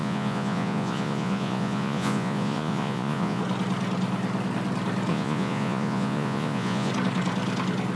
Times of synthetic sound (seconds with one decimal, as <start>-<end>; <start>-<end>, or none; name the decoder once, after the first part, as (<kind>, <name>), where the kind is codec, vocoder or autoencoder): 0.0-3.4 (vocoder, Vocos); 5.1-6.9